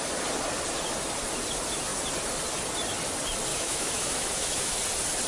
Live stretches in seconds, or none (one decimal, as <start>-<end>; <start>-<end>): 0.0-3.5; 4.8-5.3